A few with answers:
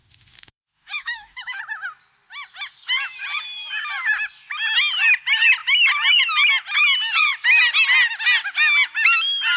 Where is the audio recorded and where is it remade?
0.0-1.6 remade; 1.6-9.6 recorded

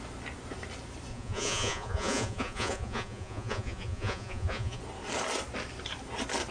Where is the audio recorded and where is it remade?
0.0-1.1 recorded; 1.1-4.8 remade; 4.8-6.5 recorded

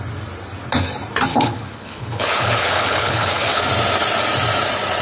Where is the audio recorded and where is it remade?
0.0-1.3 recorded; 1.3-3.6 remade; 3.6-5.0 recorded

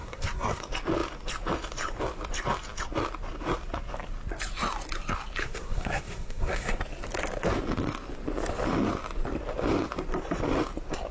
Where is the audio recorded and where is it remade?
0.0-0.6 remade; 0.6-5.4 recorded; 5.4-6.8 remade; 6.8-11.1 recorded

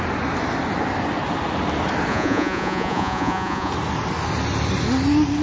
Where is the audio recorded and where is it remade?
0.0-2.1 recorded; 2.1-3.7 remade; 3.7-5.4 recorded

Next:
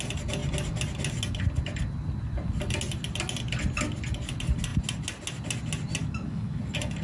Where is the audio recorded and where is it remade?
0.0-6.0 recorded; 6.0-6.6 remade; 6.6-7.0 recorded

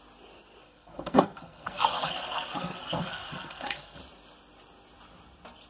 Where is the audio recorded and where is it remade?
0.0-0.6 recorded; 0.6-4.0 remade; 4.0-5.7 recorded

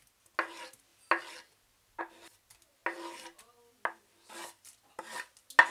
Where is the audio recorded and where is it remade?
0.0-5.7 recorded